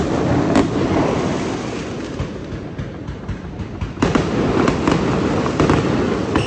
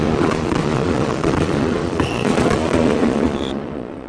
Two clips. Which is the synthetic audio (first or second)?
second